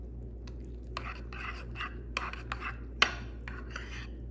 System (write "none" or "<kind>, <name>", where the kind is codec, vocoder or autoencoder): none